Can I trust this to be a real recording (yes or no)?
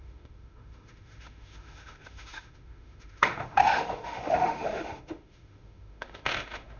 no